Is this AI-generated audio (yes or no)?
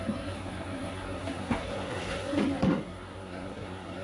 yes